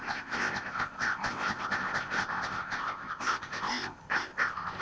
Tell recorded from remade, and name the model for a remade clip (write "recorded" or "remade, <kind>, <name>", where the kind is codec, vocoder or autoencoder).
remade, codec, ZipCodec